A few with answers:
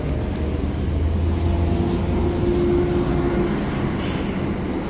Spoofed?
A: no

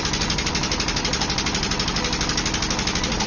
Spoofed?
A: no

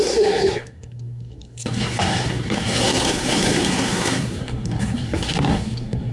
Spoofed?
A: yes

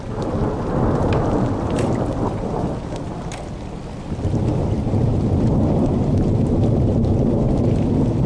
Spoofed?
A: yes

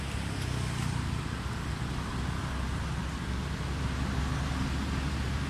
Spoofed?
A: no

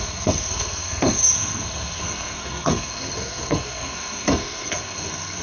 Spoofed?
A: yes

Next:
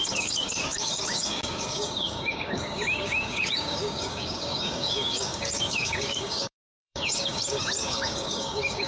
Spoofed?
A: yes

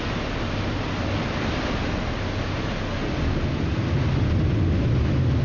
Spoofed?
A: no